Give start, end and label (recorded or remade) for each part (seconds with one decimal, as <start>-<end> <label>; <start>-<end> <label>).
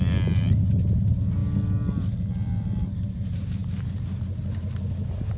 0.0-5.4 recorded